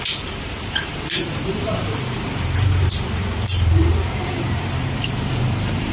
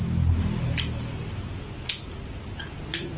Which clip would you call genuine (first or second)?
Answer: second